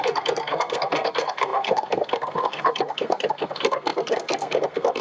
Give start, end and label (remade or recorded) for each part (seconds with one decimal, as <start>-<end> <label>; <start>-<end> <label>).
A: 0.0-5.0 remade